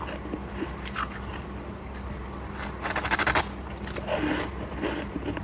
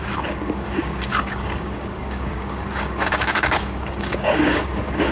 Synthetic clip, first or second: second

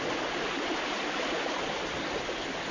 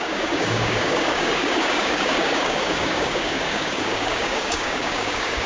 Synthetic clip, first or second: second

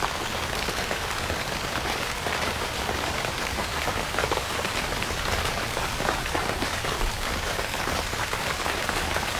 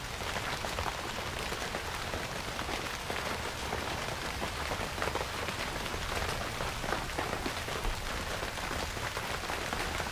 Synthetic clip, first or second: first